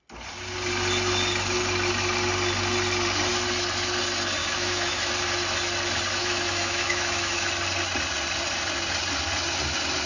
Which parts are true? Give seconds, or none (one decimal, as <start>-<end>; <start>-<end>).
0.0-4.4; 5.1-6.2; 7.5-10.1

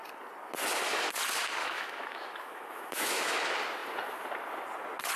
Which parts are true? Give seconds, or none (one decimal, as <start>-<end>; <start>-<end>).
0.0-1.6; 3.4-5.2

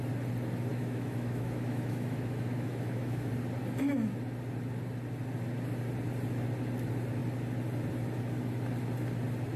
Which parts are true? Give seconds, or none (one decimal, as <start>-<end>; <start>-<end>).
0.0-0.7; 3.3-9.6

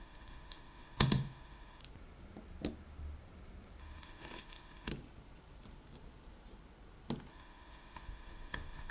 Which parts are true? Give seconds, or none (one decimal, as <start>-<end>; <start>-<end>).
1.8-3.8; 4.9-7.3

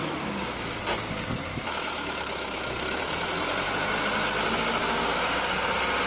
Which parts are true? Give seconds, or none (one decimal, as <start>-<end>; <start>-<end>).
0.8-1.5; 3.0-4.8; 5.4-6.1